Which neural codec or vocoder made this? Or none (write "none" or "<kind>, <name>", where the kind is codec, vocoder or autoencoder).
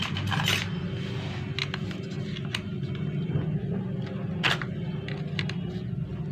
none